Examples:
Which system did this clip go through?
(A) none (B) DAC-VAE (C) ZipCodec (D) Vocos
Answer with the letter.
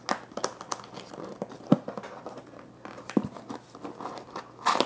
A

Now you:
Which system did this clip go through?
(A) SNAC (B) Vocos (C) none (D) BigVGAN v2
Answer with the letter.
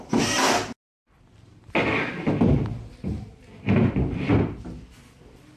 C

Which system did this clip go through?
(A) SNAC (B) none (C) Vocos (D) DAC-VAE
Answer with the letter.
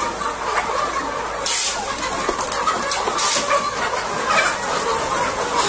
B